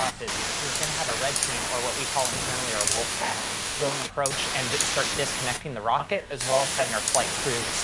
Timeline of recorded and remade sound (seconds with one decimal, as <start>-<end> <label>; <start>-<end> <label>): 0.0-2.9 recorded; 2.9-4.1 remade; 4.1-6.0 recorded; 6.0-6.9 remade; 6.9-7.8 recorded